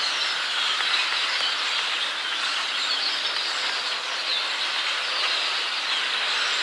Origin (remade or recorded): recorded